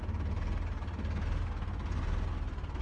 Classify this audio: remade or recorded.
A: recorded